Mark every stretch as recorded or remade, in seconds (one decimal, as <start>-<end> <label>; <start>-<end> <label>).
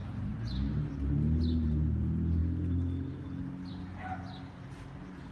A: 0.0-5.3 recorded